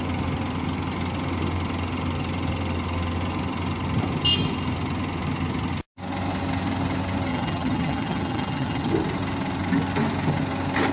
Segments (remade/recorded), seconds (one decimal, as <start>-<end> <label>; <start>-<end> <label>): 0.0-7.3 recorded; 7.3-8.9 remade; 8.9-10.9 recorded